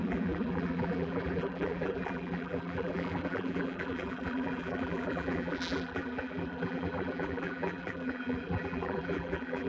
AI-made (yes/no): yes